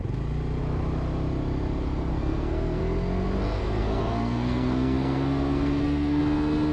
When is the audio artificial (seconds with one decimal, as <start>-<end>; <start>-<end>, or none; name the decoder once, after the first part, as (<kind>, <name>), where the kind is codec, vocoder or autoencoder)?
2.1-2.8 (codec, SNAC); 3.6-6.2